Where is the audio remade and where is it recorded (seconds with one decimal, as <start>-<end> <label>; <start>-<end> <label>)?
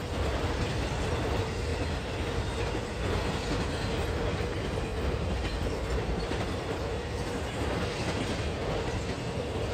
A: 0.0-1.7 recorded; 1.7-2.9 remade; 2.9-4.9 recorded; 4.9-7.5 remade; 7.5-9.7 recorded